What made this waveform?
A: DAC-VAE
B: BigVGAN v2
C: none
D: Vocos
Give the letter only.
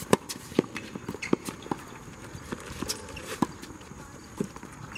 B